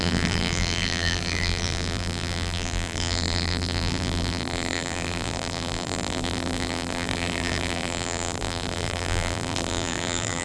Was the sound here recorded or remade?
remade